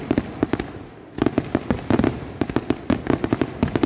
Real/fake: real